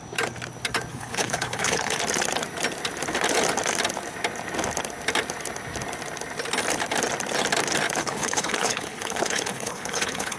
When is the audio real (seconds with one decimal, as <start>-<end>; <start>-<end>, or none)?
0.0-0.9; 2.0-8.0